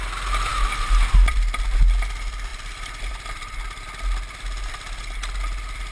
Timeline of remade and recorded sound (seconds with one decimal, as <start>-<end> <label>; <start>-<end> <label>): 0.0-5.9 recorded